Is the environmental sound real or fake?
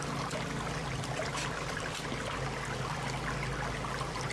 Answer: real